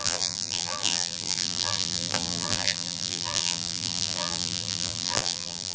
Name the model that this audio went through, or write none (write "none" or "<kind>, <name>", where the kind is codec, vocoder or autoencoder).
vocoder, BigVGAN v2